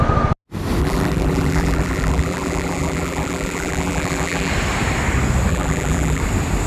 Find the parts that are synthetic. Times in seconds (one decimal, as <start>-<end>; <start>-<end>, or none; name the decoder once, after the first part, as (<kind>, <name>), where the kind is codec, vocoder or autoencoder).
0.8-4.5 (vocoder, BigVGAN v2); 5.5-6.2